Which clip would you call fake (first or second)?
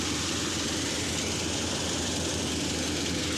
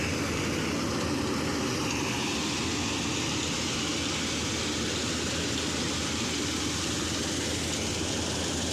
first